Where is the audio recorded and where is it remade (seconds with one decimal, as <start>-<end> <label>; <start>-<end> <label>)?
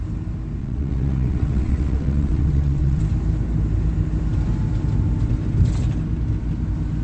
0.0-0.6 recorded; 0.6-3.0 remade; 3.0-7.0 recorded